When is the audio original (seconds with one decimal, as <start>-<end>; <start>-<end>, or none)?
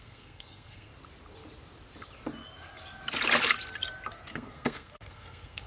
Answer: 0.9-4.3